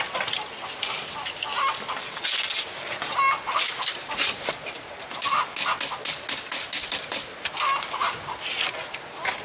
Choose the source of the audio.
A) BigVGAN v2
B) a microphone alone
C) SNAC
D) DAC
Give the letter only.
B